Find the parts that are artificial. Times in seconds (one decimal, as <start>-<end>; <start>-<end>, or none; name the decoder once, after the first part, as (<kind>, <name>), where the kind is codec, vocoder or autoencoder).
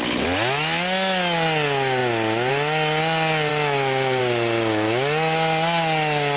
none